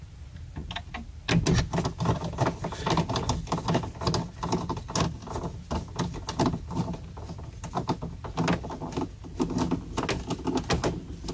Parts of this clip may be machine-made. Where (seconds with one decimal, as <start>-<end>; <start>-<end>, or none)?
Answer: none